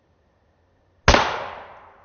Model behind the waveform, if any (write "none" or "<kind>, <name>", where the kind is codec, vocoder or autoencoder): none